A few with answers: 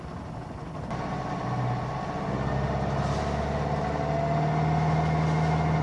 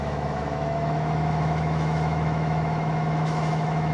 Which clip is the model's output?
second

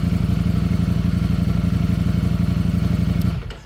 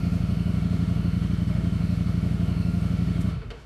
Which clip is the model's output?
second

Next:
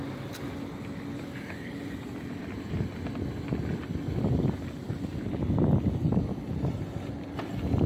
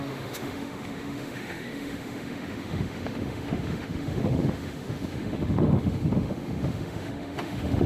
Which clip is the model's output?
second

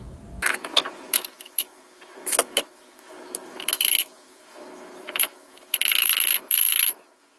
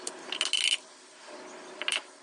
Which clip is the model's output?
first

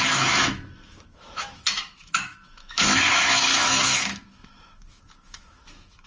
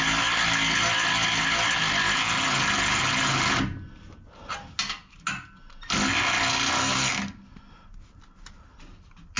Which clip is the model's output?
first